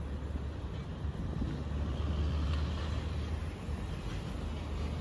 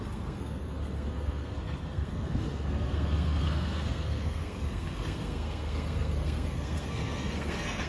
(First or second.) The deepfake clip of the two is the second